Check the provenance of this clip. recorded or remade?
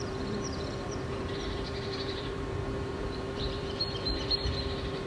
remade